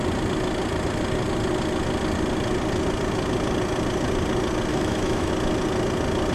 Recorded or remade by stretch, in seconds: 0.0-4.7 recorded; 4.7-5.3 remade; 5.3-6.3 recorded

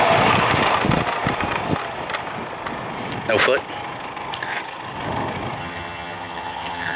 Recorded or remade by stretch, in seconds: 0.0-5.6 recorded; 5.6-7.0 remade

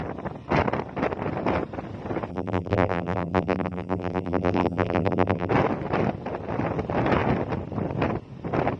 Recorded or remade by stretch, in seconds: 0.0-2.3 recorded; 2.3-5.5 remade; 5.5-8.8 recorded